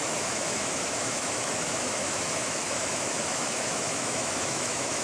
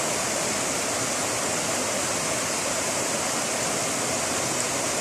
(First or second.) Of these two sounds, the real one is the second